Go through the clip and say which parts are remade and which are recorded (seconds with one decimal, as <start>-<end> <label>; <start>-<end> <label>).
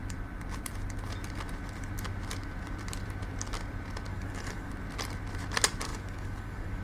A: 0.0-4.1 recorded; 4.1-4.7 remade; 4.7-5.9 recorded; 5.9-6.8 remade